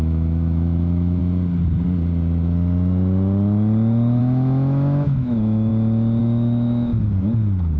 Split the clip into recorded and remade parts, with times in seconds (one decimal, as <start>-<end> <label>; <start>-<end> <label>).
0.0-1.2 remade; 1.2-4.2 recorded; 4.2-5.7 remade; 5.7-6.2 recorded; 6.2-6.9 remade; 6.9-7.8 recorded